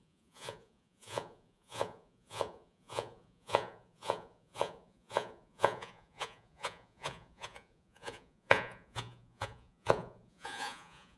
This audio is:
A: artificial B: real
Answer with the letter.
A